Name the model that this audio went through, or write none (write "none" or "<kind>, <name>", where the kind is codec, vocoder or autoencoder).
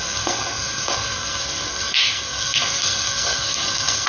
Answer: codec, SNAC